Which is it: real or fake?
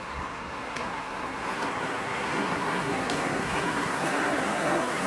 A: fake